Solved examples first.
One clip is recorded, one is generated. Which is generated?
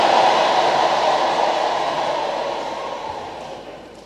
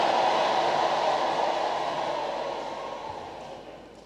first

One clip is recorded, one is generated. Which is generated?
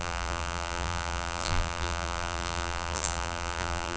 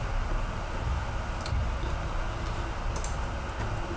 first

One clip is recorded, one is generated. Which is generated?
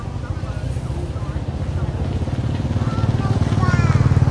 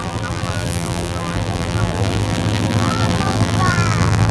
second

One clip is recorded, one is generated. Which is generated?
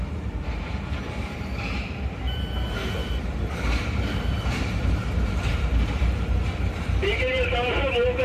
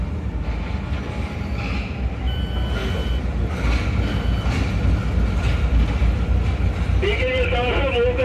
first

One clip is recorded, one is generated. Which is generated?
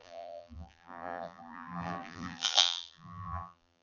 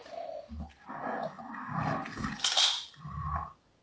first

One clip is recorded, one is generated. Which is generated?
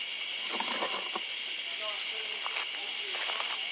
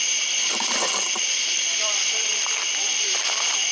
second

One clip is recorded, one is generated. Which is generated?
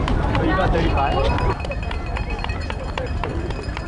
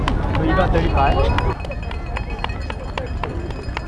first